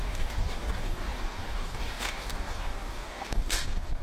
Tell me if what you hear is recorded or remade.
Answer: remade